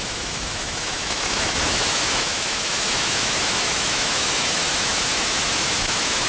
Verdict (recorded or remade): remade